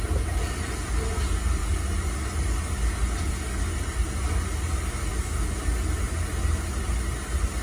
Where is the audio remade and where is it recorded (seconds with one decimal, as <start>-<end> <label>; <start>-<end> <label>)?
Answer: 0.0-7.6 recorded